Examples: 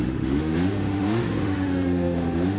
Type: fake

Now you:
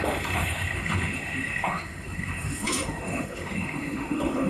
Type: fake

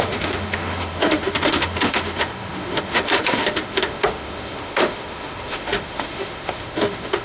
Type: fake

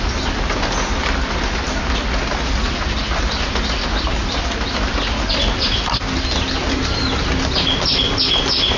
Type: real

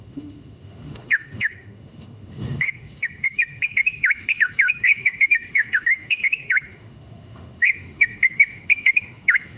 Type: fake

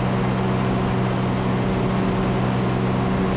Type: real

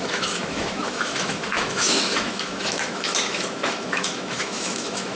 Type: fake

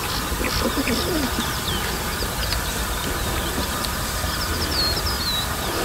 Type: real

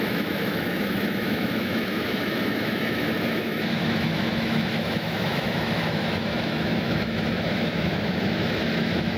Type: fake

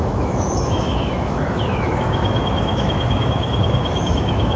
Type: fake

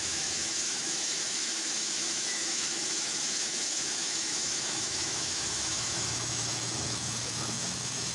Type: fake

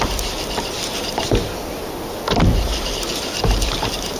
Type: real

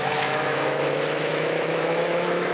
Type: fake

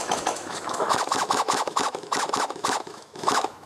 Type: fake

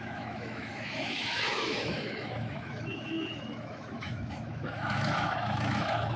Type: fake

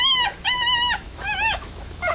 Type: fake